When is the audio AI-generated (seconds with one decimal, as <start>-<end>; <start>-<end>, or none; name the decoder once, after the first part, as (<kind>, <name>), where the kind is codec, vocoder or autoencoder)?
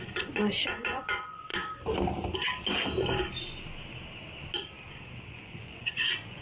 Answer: 0.0-1.5 (vocoder, Vocos); 5.3-6.4